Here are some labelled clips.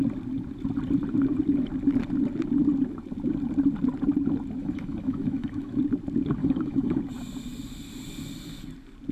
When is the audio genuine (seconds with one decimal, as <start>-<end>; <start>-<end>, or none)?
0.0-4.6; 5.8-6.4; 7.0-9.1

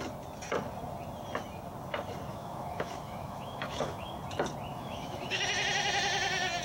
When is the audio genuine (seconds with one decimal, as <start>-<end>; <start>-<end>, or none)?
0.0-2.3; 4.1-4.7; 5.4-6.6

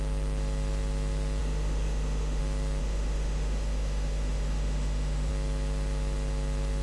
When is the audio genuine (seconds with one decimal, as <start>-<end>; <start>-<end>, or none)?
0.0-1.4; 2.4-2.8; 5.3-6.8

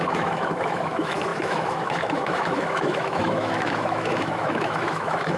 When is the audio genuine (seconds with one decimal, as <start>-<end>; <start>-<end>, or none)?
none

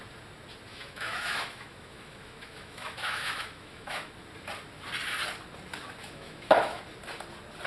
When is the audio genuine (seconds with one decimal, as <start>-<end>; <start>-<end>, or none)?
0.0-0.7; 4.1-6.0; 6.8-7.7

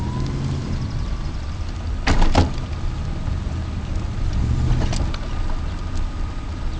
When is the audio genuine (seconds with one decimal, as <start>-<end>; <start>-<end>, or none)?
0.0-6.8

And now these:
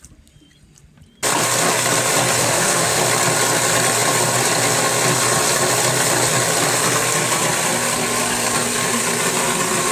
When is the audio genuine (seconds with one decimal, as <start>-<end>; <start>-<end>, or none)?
0.0-2.4; 3.0-9.9

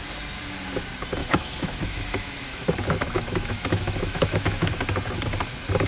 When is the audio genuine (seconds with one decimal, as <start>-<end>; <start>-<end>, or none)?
0.0-1.2; 4.7-5.9